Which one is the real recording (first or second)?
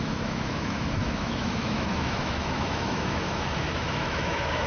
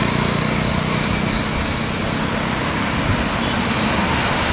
second